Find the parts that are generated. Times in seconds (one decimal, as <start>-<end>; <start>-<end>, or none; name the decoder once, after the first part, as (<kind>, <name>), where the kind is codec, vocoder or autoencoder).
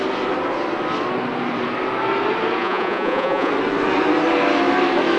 2.6-3.5 (vocoder, Vocos)